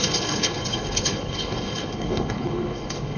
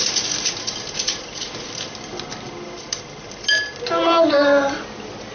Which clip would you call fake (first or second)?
first